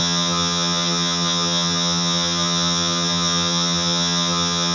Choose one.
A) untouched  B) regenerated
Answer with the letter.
B